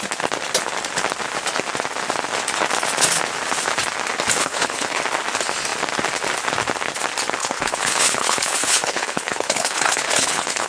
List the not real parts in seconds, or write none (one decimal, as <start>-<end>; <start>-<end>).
4.4-5.0; 7.4-10.7